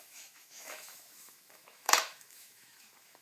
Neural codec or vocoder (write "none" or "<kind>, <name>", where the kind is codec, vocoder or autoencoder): autoencoder, DAC-VAE